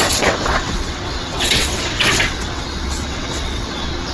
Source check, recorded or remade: remade